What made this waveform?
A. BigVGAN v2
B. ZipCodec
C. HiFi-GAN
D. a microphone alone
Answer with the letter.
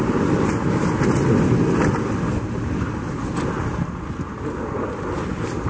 D